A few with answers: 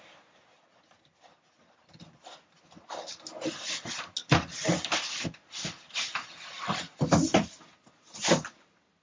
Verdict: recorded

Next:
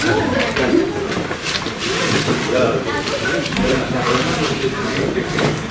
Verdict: remade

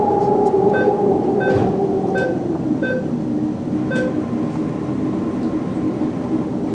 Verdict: recorded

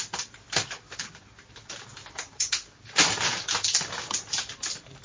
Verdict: recorded